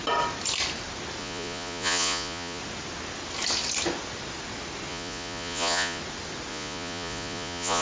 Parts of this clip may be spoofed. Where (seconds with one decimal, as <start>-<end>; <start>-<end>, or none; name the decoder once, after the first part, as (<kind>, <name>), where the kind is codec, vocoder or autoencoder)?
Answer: 1.2-2.6 (vocoder, Vocos); 4.9-6.0; 6.5-7.8

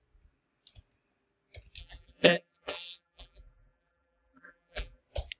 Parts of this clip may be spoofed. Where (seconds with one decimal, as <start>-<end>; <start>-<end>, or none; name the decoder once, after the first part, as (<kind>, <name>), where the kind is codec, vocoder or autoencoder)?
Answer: 1.8-5.0 (vocoder, BigVGAN v2)

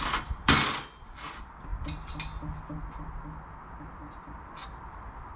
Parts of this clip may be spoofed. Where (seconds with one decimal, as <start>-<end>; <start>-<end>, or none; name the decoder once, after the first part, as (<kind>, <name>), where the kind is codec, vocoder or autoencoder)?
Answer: none

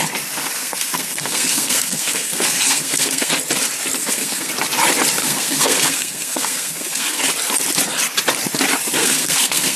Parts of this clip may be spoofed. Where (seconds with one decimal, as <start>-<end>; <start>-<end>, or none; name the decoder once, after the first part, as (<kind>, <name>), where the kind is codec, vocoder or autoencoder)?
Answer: 0.6-3.3 (codec, SNAC); 4.0-4.5; 5.2-7.2; 9.0-9.8

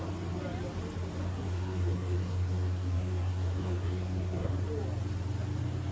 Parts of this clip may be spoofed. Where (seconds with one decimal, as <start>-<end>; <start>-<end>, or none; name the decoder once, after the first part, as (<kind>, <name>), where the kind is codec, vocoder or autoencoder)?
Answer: 1.3-4.6 (codec, SNAC)

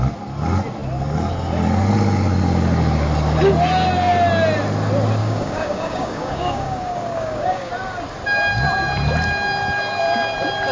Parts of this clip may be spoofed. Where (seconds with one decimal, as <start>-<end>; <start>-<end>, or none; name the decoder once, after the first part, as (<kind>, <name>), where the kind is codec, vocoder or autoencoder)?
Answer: 5.2-7.7 (codec, DAC)